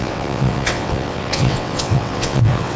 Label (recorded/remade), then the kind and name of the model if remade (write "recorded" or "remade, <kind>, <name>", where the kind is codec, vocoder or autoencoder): remade, vocoder, WaveNeXt